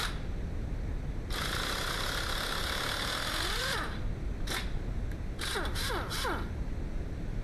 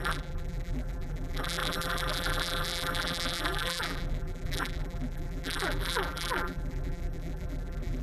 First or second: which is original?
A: first